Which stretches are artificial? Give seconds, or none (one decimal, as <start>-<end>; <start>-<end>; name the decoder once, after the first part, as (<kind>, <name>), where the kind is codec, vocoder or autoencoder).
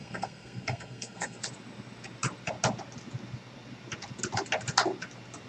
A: 0.0-1.4 (codec, SNAC)